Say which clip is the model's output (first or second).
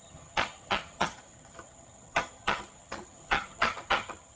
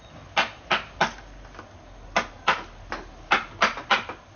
first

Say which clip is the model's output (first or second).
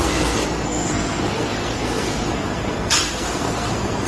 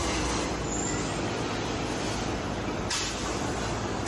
first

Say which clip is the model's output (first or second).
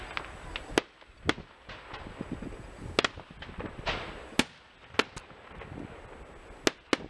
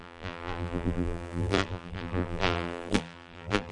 second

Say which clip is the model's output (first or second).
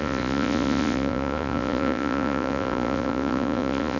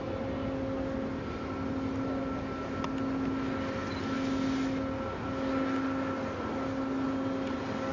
first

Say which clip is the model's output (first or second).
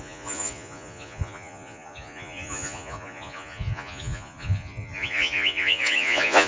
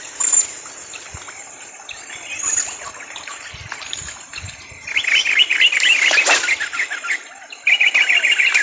first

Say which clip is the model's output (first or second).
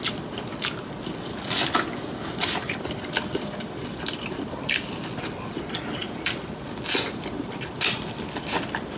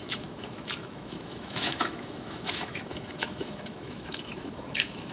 second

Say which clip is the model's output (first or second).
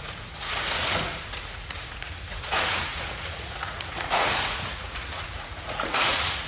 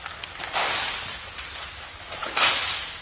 first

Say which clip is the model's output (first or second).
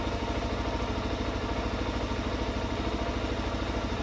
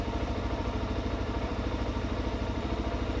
second